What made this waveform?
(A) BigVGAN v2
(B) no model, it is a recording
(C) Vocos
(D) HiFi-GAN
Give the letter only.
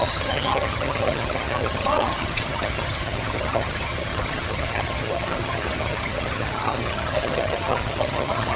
D